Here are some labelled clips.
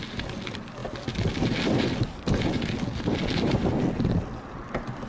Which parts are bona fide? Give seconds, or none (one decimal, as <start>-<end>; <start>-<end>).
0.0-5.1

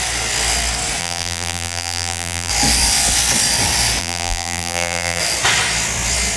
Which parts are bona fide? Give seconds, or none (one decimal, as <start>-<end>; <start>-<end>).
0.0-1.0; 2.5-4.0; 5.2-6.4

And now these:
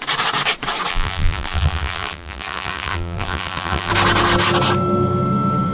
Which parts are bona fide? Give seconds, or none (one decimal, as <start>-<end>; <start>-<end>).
0.0-0.9; 3.9-5.7

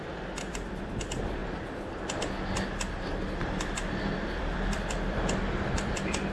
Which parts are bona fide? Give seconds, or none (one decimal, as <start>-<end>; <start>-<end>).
1.4-3.1

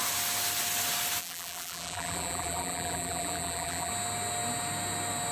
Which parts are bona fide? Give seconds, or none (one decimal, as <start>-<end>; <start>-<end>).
0.0-1.2; 3.9-5.3